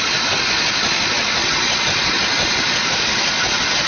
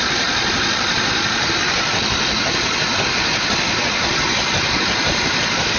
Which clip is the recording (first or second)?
first